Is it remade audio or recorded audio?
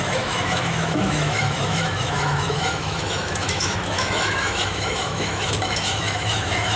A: remade